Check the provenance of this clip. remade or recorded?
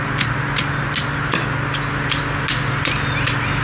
recorded